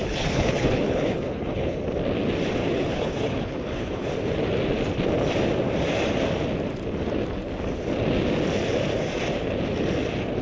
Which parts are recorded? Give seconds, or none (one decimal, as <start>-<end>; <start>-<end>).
1.8-2.6; 4.1-10.4